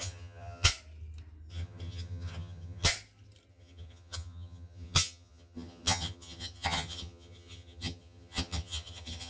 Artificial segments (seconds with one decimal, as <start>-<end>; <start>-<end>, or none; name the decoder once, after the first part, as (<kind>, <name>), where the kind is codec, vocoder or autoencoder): 0.0-0.7 (vocoder, HiFi-GAN); 1.5-2.9; 3.5-9.3